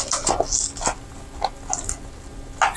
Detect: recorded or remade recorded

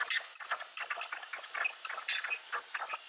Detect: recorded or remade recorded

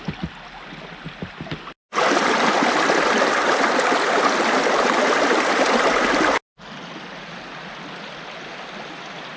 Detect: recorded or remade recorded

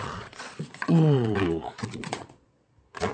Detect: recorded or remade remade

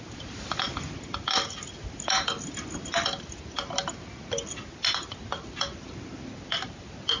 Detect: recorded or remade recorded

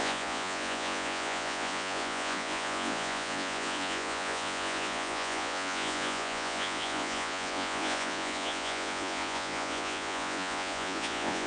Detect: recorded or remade remade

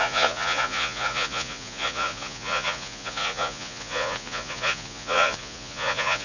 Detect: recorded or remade remade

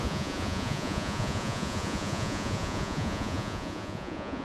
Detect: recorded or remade remade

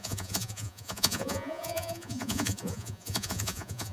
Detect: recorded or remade remade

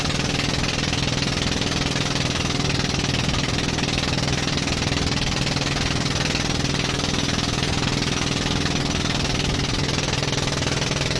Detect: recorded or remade recorded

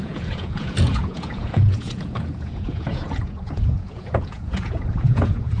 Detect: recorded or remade remade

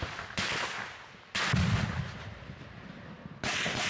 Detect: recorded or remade recorded